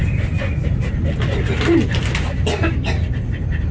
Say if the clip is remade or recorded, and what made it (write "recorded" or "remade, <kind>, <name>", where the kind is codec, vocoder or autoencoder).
recorded